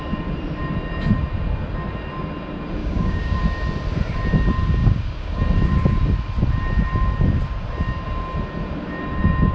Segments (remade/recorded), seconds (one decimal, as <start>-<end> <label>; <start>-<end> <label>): 0.0-2.8 recorded; 2.8-3.4 remade; 3.4-4.8 recorded; 4.8-5.4 remade; 5.4-9.5 recorded